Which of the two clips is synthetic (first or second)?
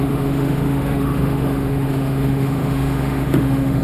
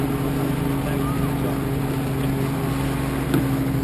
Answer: first